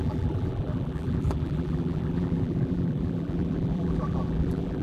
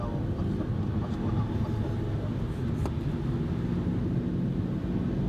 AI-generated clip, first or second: first